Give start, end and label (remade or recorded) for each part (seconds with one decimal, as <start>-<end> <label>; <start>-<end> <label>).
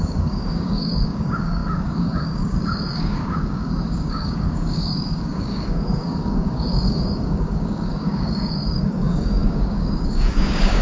0.0-10.8 remade